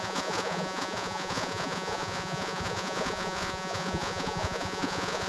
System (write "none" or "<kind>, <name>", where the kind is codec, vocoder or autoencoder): vocoder, Vocos